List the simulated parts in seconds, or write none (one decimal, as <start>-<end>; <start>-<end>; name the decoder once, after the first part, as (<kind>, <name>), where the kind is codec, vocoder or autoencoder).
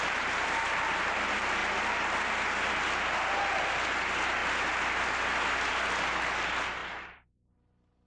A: 6.8-7.5 (vocoder, BigVGAN v2)